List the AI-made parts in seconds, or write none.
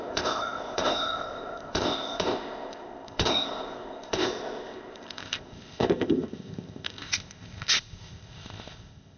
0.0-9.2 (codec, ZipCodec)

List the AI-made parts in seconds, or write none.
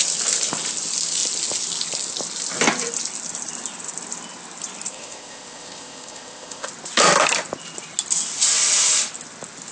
4.9-6.7 (codec, ZipCodec)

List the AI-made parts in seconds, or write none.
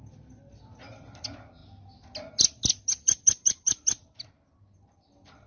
none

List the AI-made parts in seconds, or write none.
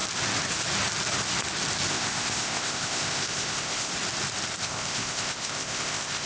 1.9-3.9 (codec, ZipCodec); 4.6-6.3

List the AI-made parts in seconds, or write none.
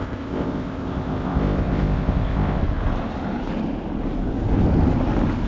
0.0-2.6 (codec, ZipCodec)